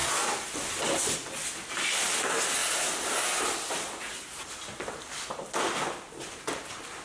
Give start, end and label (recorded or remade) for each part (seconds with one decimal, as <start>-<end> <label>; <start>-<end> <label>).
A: 0.0-7.0 recorded